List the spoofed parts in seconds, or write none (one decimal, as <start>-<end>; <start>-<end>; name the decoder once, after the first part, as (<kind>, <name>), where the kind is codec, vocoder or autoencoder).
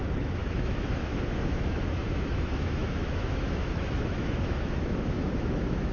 0.0-5.9 (autoencoder, DAC-VAE)